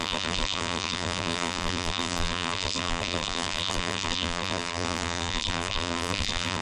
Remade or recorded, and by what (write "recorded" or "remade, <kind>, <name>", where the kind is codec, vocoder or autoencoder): remade, vocoder, BigVGAN v2